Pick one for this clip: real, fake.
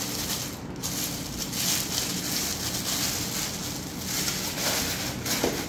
real